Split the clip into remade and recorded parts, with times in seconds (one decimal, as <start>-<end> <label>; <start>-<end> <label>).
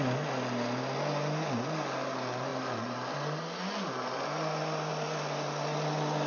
0.0-6.3 recorded